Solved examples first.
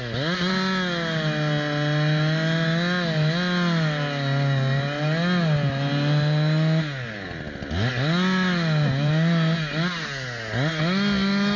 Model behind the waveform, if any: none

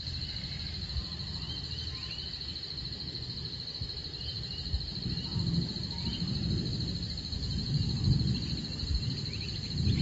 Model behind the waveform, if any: none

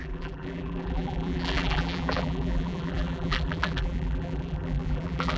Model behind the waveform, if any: vocoder, BigVGAN v2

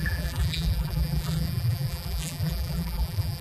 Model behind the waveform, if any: vocoder, BigVGAN v2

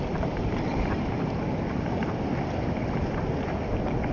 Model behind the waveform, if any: none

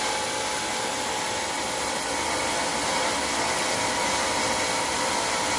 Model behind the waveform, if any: none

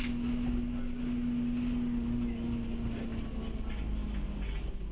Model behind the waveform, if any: none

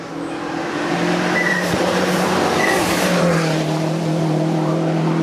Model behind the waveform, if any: vocoder, BigVGAN v2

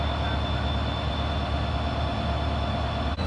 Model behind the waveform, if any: none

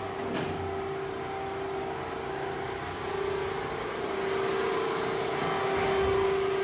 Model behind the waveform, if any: none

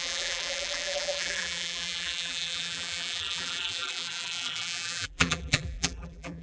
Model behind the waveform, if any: vocoder, BigVGAN v2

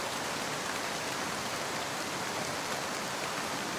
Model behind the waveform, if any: vocoder, BigVGAN v2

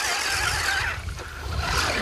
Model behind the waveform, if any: none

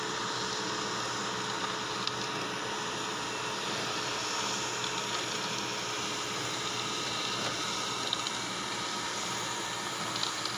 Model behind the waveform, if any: none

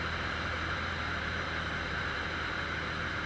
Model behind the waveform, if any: vocoder, BigVGAN v2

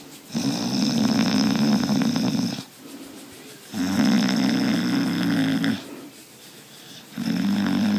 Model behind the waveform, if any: none